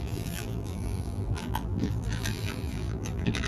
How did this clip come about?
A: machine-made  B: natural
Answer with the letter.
A